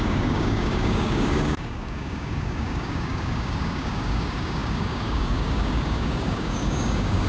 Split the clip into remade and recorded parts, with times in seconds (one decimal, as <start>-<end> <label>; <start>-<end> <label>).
0.0-7.3 remade